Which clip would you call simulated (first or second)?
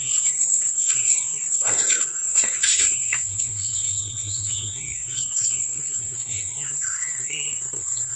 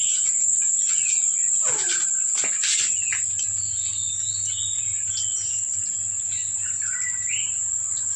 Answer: first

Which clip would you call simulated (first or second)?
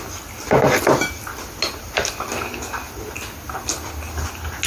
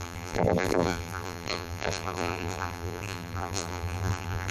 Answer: second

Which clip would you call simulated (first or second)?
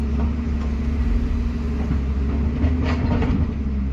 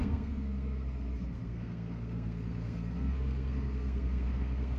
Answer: second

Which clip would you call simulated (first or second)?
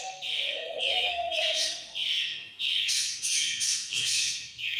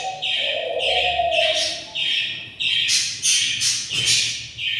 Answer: first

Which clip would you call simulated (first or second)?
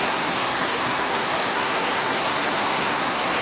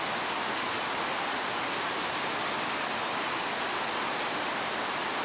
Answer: first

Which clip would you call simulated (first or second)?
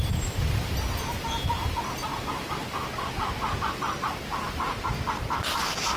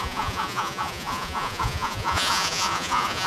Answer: second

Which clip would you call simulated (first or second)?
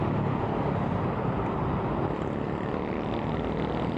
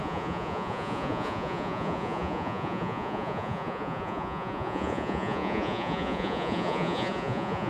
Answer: second